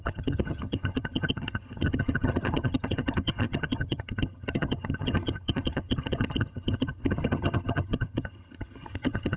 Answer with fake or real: fake